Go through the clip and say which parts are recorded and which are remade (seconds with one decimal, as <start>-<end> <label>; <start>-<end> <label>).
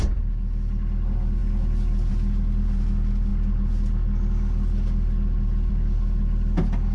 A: 0.0-6.9 recorded